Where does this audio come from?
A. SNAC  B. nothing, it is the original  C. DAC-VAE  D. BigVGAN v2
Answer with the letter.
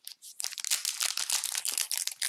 B